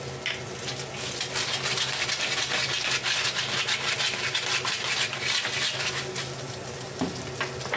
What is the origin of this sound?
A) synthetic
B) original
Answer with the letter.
B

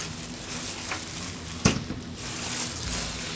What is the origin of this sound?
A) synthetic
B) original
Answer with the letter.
B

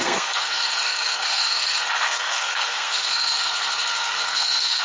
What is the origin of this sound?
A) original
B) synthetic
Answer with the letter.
B